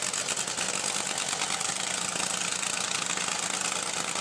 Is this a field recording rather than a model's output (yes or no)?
yes